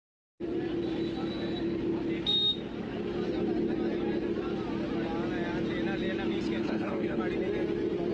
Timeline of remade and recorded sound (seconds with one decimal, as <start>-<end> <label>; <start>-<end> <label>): 0.0-6.6 recorded; 6.6-7.2 remade; 7.2-8.1 recorded